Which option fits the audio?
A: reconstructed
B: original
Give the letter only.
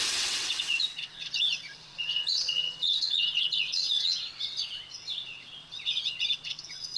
A